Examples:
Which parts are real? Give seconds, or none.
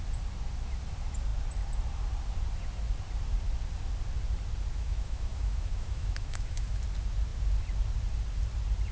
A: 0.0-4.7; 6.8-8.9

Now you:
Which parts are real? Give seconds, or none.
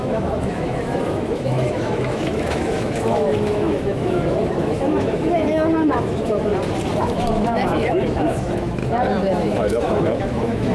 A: 6.5-7.0; 8.8-9.3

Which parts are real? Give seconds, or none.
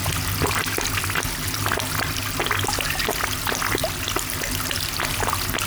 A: 0.0-5.7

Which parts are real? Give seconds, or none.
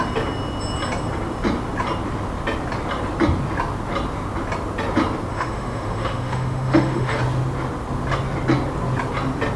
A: 0.0-5.3; 7.2-9.6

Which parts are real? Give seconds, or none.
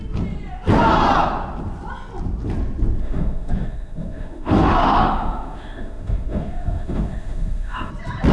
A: 0.0-3.0; 7.9-8.3